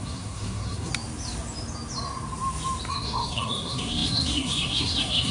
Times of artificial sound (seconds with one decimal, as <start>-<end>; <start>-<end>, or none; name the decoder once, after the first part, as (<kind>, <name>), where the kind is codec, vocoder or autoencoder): 0.0-0.9 (codec, SNAC); 2.9-5.3